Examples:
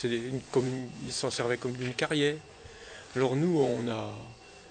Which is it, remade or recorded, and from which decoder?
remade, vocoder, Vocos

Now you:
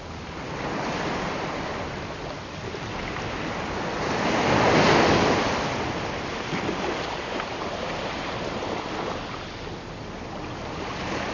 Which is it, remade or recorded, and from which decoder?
recorded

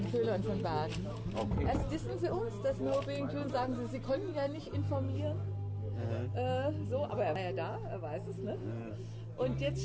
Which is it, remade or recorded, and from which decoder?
recorded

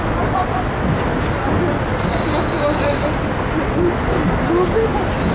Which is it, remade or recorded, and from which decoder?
recorded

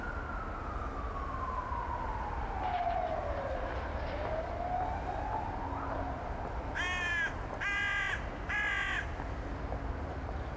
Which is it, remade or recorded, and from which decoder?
recorded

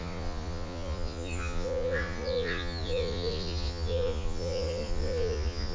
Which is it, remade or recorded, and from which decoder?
remade, vocoder, Vocos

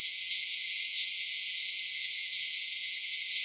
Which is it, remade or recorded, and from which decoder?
remade, vocoder, Vocos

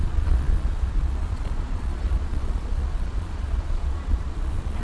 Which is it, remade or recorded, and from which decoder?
remade, vocoder, Vocos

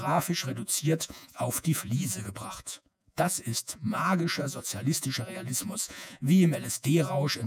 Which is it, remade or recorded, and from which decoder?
remade, vocoder, Vocos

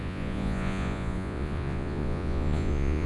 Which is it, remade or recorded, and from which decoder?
remade, vocoder, Vocos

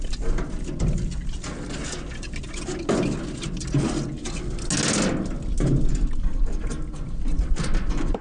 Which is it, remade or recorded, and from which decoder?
recorded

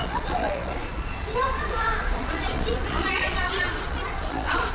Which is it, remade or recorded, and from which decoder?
remade, vocoder, Vocos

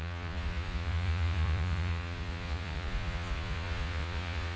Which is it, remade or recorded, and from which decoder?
remade, vocoder, Vocos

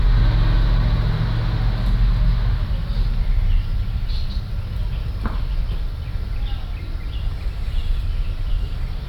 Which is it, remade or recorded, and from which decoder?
recorded